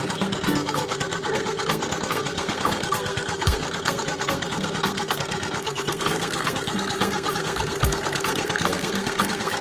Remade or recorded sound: remade